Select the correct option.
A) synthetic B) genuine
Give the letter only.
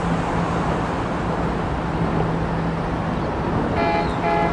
B